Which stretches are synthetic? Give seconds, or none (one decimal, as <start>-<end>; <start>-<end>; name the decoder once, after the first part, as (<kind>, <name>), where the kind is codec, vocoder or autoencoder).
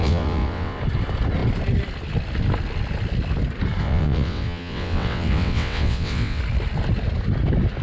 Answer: 0.0-0.8 (vocoder, WaveNeXt); 3.8-6.4